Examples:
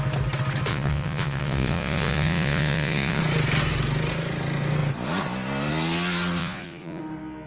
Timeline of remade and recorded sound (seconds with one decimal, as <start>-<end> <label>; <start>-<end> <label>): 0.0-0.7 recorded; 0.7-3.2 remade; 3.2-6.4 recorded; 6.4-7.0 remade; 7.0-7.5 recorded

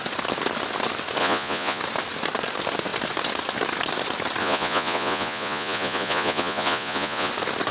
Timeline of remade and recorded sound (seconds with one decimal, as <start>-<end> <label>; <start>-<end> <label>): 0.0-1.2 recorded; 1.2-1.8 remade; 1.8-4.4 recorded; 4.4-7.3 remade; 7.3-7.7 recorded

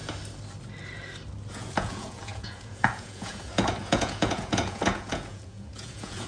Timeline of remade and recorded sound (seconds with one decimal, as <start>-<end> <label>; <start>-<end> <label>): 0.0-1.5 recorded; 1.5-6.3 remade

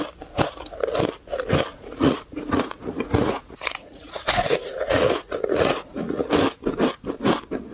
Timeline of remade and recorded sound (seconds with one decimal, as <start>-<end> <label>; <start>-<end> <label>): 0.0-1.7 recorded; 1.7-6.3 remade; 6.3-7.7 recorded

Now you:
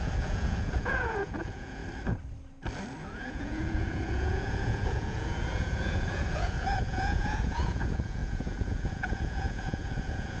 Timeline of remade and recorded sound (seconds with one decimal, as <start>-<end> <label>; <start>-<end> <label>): 0.0-1.8 remade; 1.8-3.0 recorded; 3.0-10.4 remade

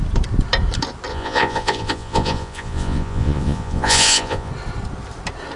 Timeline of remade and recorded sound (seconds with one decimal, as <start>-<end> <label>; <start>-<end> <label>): 0.0-1.1 recorded; 1.1-4.5 remade; 4.5-5.6 recorded

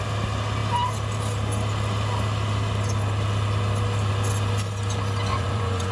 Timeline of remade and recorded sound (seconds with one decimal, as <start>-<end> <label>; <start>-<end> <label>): 0.0-5.3 recorded; 5.3-5.9 remade

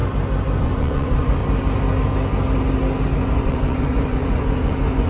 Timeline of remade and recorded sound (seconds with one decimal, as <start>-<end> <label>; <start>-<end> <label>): 0.0-0.6 recorded; 0.6-1.4 remade; 1.4-3.1 recorded; 3.1-5.1 remade